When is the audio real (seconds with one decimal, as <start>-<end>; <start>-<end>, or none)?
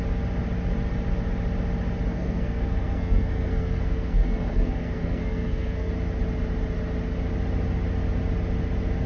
0.0-2.1; 5.9-9.1